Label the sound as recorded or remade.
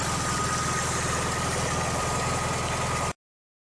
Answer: recorded